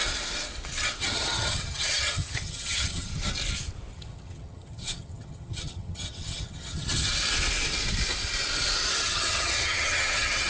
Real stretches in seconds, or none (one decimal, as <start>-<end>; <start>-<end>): 0.0-1.0; 3.1-3.9; 7.1-9.0